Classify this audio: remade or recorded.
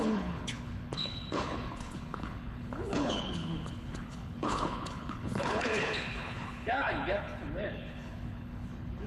remade